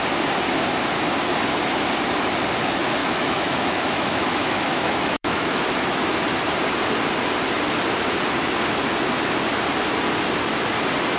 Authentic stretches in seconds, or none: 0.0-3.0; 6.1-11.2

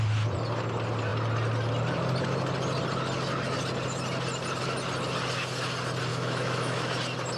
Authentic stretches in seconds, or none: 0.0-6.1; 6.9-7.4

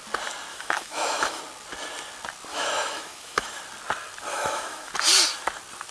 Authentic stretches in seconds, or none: 0.0-0.5; 1.4-2.5; 3.6-4.3; 4.9-5.9

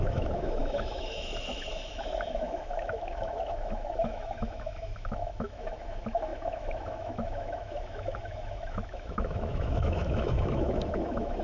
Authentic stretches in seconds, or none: none

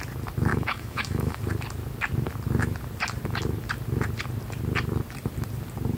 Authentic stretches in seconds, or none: 0.0-0.5; 1.4-6.0

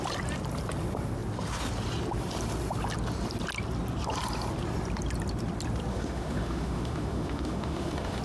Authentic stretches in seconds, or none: 0.0-5.9